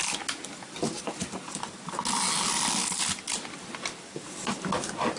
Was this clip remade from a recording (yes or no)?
no